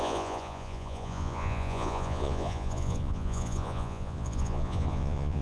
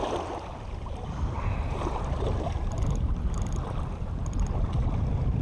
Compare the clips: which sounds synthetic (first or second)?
first